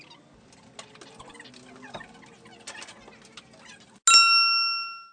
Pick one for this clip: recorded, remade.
recorded